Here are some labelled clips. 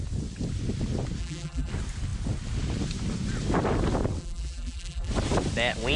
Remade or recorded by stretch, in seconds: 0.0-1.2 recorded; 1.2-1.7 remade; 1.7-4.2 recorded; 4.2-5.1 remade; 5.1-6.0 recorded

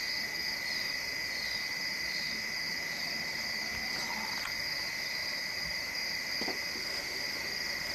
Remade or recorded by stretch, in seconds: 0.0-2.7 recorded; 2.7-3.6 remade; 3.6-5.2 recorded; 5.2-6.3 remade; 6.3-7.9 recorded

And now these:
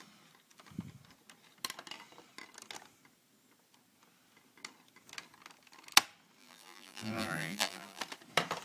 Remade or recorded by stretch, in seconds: 0.0-6.4 recorded; 6.4-8.0 remade; 8.0-8.6 recorded